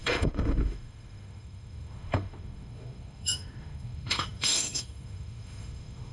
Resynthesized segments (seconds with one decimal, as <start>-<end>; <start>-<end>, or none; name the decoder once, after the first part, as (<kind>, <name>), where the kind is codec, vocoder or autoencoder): 0.0-6.1 (autoencoder, DAC-VAE)